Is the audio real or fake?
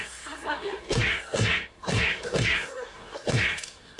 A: fake